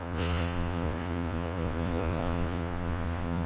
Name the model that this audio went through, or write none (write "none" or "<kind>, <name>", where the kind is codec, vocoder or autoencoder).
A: vocoder, Vocos